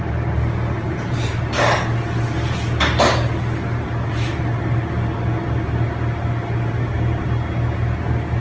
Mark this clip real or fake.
real